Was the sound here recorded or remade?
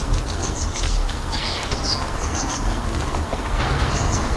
remade